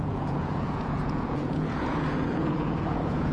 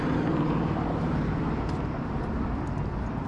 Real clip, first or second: second